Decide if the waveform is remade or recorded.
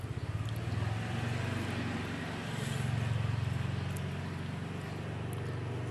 recorded